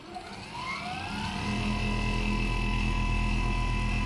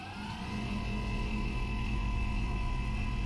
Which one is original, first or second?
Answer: first